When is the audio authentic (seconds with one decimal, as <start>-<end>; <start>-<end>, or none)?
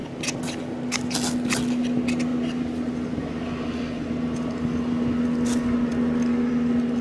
0.0-7.0